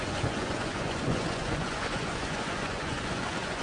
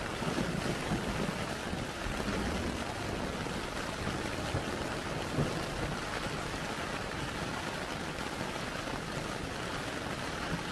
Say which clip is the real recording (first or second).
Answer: second